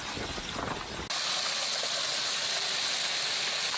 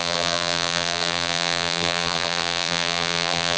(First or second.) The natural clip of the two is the first